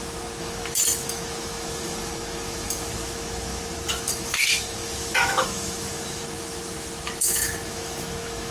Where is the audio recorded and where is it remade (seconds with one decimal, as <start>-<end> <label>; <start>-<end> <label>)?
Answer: 0.0-8.5 remade

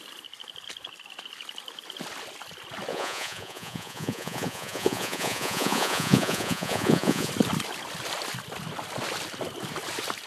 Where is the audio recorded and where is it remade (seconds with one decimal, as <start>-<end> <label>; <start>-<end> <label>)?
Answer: 0.0-2.9 recorded; 2.9-7.3 remade; 7.3-10.3 recorded

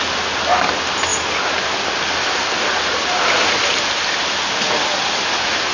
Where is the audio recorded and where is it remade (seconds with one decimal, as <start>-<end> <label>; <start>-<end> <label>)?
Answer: 0.0-5.7 recorded